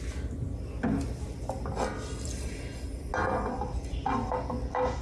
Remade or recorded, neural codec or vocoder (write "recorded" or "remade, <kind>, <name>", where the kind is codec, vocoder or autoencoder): recorded